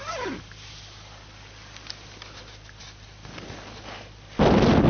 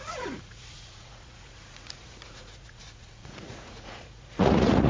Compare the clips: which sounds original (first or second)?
first